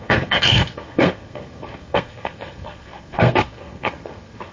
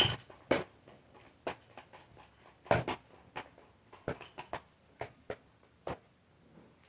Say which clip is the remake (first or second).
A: first